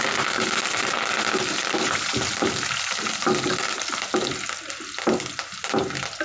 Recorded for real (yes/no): yes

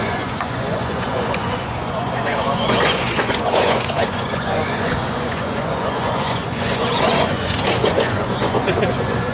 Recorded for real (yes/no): no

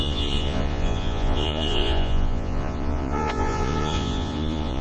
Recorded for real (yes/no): no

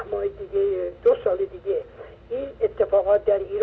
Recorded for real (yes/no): yes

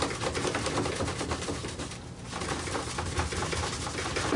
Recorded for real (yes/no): yes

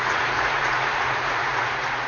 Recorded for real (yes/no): no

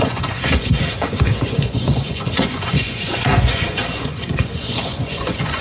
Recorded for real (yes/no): no